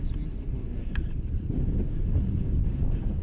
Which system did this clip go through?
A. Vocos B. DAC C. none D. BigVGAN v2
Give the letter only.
C